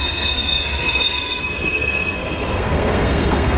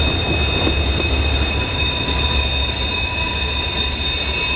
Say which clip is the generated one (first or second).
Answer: first